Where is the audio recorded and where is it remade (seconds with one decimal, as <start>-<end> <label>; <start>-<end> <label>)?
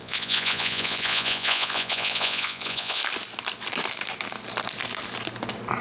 0.0-3.0 remade; 3.0-5.8 recorded